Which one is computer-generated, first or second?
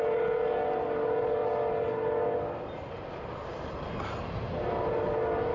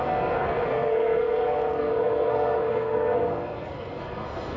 second